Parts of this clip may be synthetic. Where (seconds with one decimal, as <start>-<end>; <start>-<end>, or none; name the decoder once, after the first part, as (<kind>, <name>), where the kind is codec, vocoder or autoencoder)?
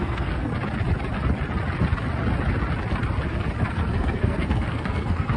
0.0-0.5 (codec, SNAC); 3.7-5.4